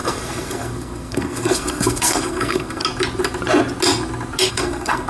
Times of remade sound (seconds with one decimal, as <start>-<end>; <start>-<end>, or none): 0.0-2.8; 4.5-5.1